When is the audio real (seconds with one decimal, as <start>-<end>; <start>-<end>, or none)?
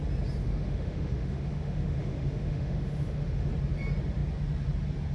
0.0-0.4; 3.5-5.1